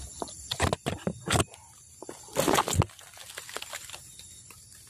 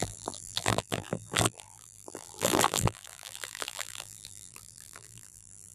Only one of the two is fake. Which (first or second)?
second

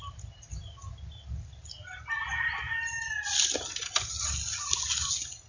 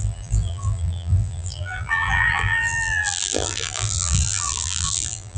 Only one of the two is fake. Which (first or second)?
second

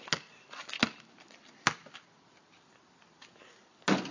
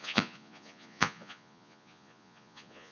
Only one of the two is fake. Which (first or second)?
second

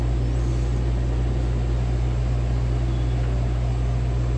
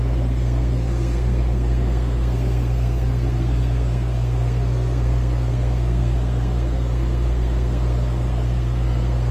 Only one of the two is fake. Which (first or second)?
second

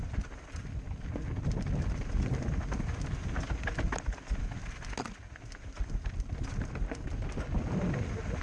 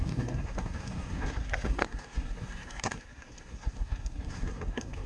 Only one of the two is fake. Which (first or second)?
second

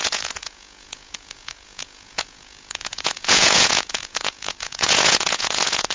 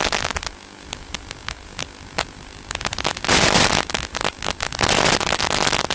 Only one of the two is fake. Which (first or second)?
first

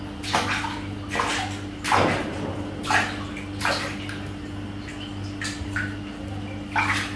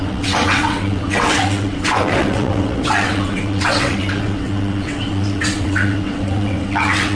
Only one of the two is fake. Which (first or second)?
second